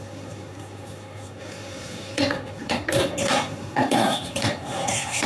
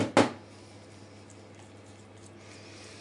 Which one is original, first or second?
second